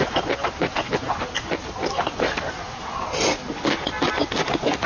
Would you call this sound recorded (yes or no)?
yes